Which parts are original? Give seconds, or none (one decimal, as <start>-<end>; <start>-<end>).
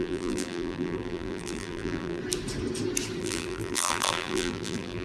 2.2-3.2